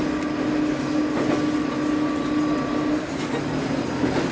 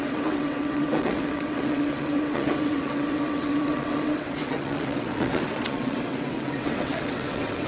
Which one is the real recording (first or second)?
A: first